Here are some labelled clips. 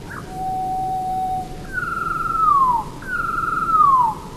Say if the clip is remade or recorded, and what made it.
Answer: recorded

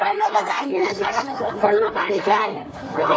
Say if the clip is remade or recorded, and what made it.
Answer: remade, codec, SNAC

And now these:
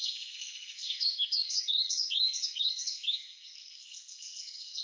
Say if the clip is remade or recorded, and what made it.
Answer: remade, codec, SNAC